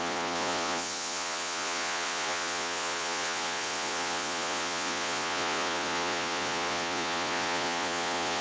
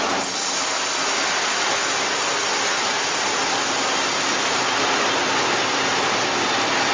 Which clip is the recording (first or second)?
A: second